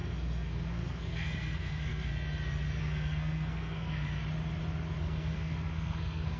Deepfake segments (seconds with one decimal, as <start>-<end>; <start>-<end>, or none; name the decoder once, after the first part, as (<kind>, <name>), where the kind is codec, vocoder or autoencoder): 0.0-2.1 (codec, SNAC); 2.8-4.2; 5.0-6.4